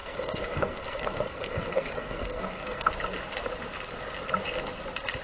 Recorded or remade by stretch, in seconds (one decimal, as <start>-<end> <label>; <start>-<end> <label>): 0.0-2.9 remade; 2.9-5.2 recorded